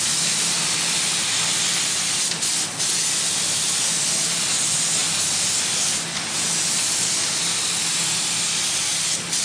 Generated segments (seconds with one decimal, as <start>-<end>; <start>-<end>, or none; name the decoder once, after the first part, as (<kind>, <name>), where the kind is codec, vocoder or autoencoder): none